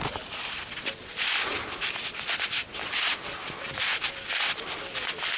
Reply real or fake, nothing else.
real